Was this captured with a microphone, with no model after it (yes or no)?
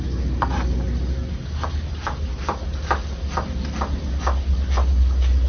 yes